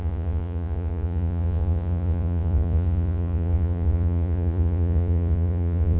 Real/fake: fake